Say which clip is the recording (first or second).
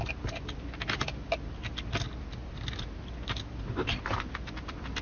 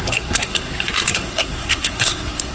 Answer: first